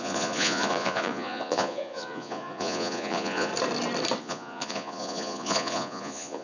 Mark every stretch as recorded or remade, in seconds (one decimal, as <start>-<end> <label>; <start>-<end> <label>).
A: 0.0-3.5 remade; 3.5-4.2 recorded; 4.2-6.4 remade